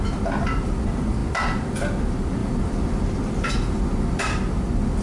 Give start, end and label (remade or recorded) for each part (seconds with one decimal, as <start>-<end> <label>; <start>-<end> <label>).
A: 0.0-5.0 recorded